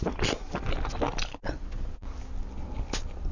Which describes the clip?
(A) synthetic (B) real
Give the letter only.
B